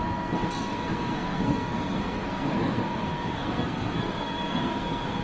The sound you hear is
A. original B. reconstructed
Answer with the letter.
B